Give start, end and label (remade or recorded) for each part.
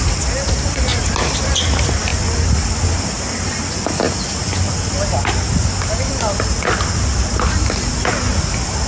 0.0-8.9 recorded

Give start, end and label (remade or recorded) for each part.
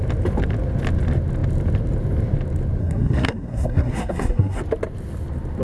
0.0-2.8 recorded; 2.8-4.6 remade; 4.6-5.6 recorded